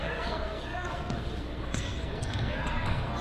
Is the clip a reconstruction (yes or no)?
yes